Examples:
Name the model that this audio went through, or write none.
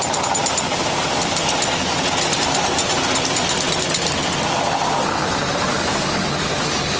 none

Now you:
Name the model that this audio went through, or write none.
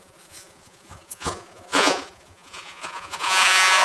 vocoder, Vocos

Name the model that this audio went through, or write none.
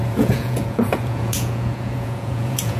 vocoder, Vocos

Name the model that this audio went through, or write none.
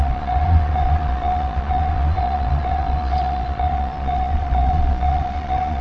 vocoder, Vocos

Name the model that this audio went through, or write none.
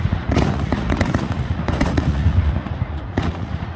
vocoder, Vocos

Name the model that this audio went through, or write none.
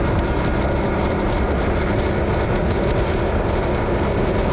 none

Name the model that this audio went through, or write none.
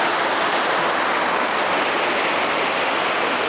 none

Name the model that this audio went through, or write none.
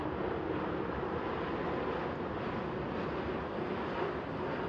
none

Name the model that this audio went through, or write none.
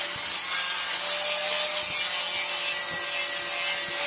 none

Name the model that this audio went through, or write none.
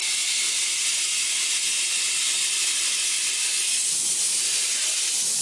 none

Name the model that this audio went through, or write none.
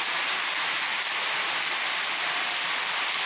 none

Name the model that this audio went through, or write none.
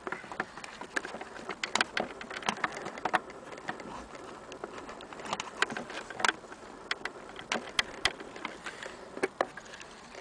none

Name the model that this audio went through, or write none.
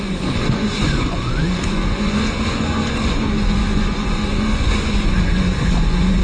vocoder, Vocos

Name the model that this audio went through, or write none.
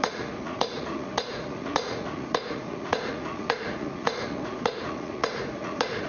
vocoder, Vocos